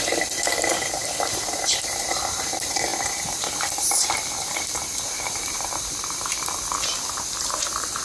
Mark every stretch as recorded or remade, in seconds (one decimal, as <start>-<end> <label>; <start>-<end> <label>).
0.0-6.3 remade; 6.3-7.4 recorded; 7.4-8.0 remade